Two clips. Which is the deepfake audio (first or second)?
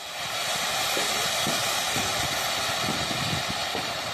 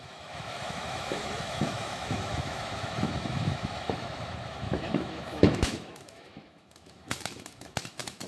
second